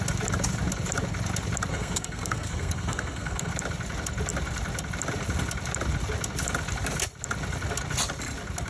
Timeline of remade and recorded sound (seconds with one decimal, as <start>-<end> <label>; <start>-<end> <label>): 0.0-1.7 recorded; 1.7-3.5 remade; 3.5-8.7 recorded